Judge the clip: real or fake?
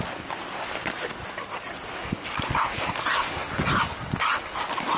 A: real